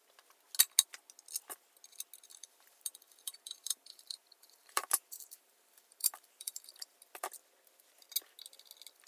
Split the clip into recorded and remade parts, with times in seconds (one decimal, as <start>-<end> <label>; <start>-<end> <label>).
0.0-2.3 recorded; 2.3-6.7 remade; 6.7-9.1 recorded